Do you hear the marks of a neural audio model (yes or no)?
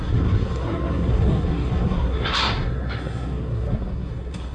yes